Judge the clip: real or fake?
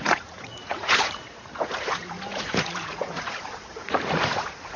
fake